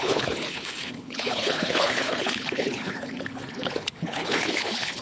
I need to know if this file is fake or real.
fake